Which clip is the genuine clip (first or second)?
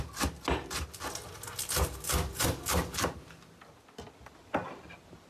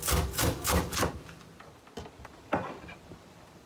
first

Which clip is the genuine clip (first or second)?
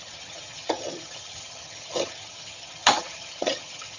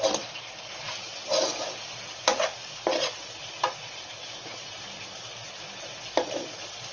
second